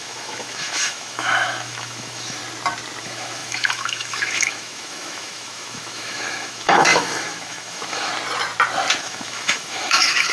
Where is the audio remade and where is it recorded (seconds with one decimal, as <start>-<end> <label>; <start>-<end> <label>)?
0.0-2.4 remade; 2.4-3.0 recorded; 3.0-8.1 remade; 8.1-9.0 recorded; 9.0-10.3 remade